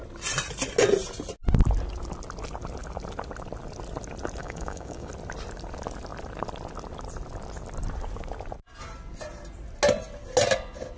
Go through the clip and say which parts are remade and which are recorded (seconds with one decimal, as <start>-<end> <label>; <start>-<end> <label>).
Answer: 0.0-4.4 recorded; 4.4-5.1 remade; 5.1-11.0 recorded